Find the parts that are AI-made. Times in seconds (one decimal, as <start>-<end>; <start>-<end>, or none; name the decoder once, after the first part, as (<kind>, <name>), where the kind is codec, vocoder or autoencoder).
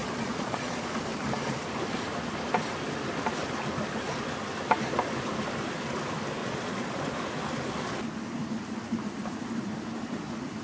0.0-0.9 (vocoder, Vocos); 6.4-7.0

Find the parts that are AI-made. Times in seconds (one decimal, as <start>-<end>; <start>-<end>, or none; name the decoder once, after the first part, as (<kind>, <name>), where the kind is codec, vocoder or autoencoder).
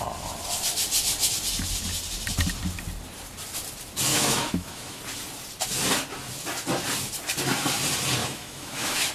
4.1-5.0 (autoencoder, DAC-VAE); 8.2-9.1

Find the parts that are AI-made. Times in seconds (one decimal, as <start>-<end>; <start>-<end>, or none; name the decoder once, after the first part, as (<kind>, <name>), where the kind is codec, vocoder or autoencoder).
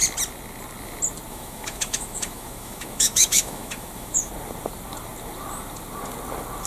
1.3-4.3 (autoencoder, DAC-VAE)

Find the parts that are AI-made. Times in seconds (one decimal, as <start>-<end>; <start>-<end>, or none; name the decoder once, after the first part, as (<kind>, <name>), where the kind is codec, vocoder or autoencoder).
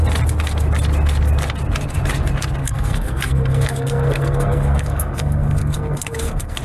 2.6-6.6 (codec, SNAC)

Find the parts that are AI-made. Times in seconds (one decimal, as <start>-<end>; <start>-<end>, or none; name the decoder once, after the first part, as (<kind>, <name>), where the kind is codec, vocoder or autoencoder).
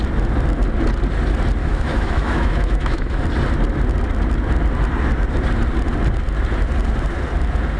1.6-3.2 (autoencoder, DAC-VAE)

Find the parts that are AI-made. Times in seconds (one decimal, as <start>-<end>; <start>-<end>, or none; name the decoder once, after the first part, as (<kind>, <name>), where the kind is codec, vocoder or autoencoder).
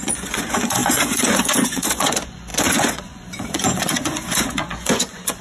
0.0-5.4 (vocoder, Vocos)